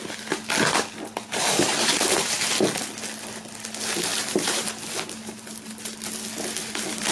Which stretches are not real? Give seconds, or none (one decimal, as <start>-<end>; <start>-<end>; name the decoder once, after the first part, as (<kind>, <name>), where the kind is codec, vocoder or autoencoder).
1.3-2.5 (vocoder, BigVGAN v2); 4.1-4.7